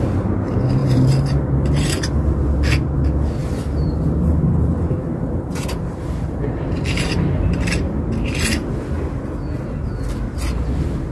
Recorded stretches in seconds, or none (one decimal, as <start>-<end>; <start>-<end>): 0.0-0.8; 2.0-3.4; 7.6-11.1